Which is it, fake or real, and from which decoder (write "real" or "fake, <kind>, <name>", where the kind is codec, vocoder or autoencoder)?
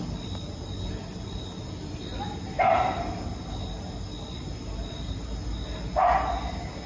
real